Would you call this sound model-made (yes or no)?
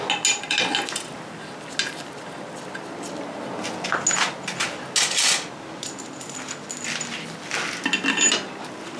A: no